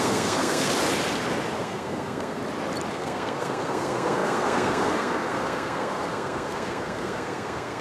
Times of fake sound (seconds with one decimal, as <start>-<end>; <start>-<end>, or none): 0.0-0.7; 1.6-2.4; 2.9-7.8

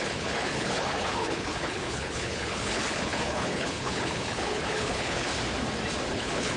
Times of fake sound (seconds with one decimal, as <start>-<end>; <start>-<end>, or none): 0.0-5.3; 6.1-6.6